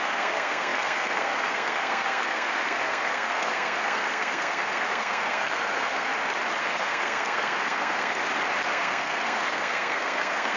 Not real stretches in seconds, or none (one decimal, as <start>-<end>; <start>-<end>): 0.0-6.1; 6.6-8.2; 8.7-10.6